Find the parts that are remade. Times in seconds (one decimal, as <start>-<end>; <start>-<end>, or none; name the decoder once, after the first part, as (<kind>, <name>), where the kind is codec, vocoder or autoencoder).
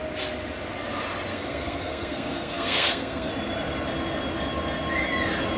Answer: 1.3-3.3 (codec, SNAC)